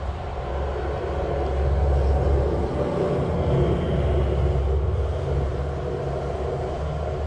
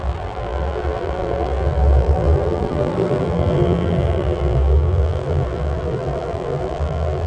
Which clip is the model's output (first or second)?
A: second